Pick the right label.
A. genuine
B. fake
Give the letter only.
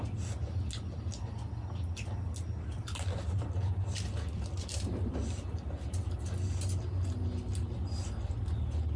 A